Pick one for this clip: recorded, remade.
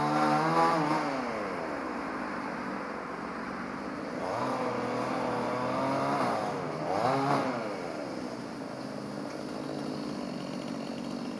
recorded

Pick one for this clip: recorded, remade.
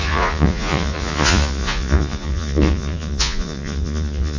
remade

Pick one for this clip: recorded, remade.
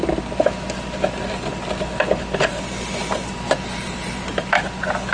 recorded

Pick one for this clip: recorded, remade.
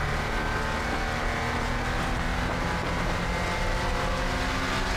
recorded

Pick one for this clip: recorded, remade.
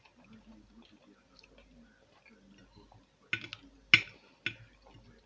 recorded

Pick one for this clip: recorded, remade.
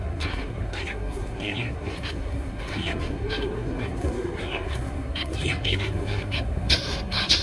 remade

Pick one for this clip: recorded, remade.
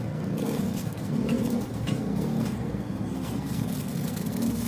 remade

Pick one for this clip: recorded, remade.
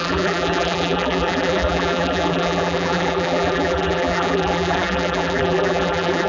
remade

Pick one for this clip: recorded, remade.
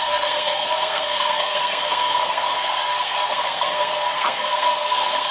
remade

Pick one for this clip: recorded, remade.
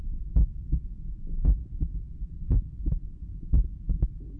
remade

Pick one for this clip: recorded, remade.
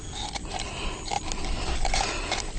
recorded